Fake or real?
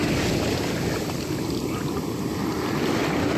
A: real